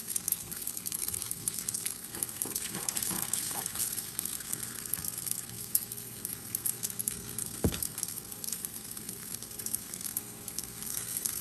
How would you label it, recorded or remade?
remade